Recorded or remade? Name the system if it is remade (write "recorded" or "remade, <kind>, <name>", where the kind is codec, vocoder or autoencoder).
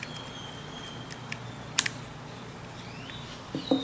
recorded